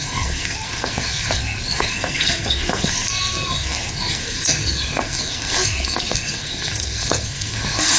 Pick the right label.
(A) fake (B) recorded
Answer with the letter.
A